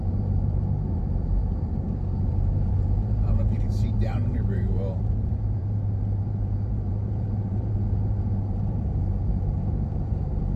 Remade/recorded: remade